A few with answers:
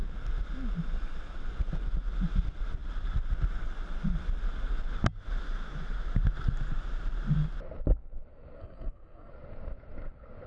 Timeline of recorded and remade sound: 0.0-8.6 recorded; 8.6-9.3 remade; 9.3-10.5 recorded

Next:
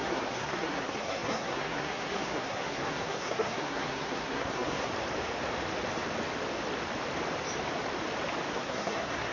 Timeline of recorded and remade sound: 0.0-4.9 remade; 4.9-8.5 recorded; 8.5-9.3 remade

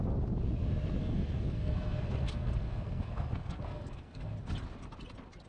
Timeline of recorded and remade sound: 0.0-1.0 recorded; 1.0-4.3 remade; 4.3-5.5 recorded

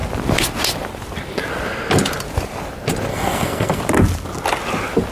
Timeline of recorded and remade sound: 0.0-3.1 recorded; 3.1-3.8 remade; 3.8-5.1 recorded

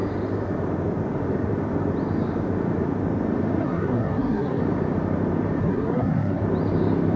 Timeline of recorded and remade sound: 0.0-3.6 recorded; 3.6-4.6 remade; 4.6-5.6 recorded; 5.6-6.4 remade; 6.4-7.2 recorded

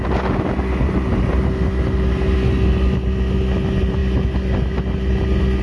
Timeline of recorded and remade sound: 0.0-5.6 recorded

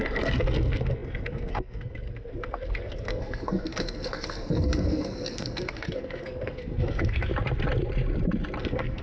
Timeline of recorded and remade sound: 0.0-7.3 remade; 7.3-8.6 recorded; 8.6-9.0 remade

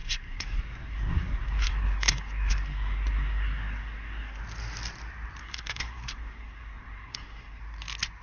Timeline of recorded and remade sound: 0.0-4.4 remade; 4.4-5.4 recorded; 5.4-7.6 remade; 7.6-8.2 recorded